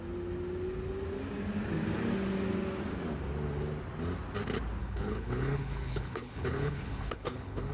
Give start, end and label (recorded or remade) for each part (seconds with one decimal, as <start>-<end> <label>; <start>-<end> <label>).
0.0-4.8 recorded; 4.8-7.7 remade